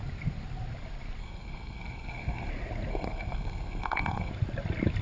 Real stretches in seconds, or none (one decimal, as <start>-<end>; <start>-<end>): 0.0-1.2; 2.5-2.9; 4.3-5.0